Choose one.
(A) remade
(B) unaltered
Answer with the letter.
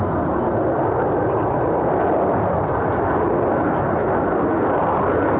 B